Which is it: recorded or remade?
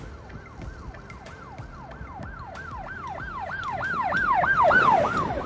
recorded